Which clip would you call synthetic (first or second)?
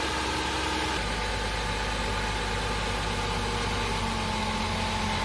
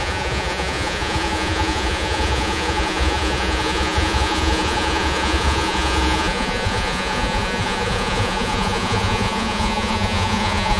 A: second